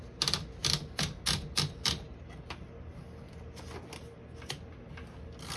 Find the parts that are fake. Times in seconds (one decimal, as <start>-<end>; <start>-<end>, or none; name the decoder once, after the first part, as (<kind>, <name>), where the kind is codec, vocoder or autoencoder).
none